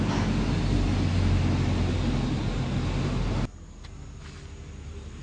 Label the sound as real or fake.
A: real